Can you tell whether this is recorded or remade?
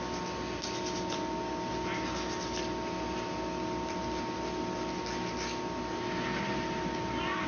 recorded